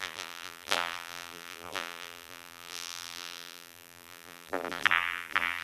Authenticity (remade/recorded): remade